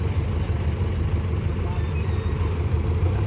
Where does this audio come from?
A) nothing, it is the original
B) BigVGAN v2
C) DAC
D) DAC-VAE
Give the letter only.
A